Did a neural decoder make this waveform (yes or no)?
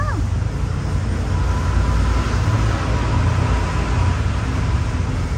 no